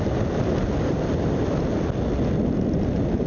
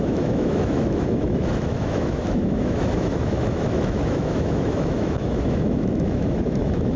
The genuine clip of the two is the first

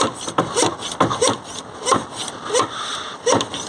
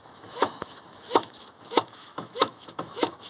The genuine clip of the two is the first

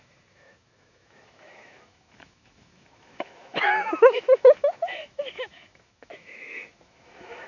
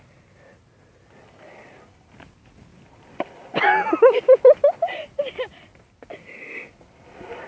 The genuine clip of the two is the second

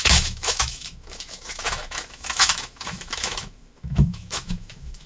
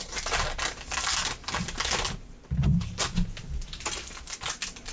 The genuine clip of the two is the second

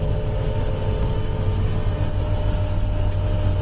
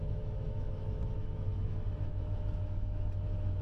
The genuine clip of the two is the first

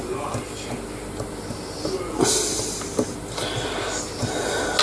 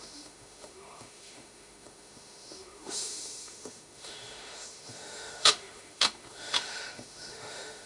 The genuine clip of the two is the first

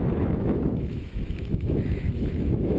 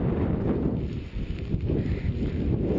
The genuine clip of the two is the second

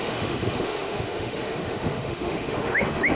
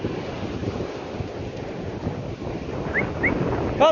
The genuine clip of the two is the second